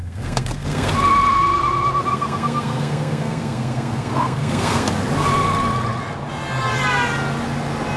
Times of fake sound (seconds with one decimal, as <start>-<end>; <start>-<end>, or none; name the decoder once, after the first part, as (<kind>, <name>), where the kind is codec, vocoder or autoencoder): 0.0-0.9 (codec, SNAC); 2.1-4.9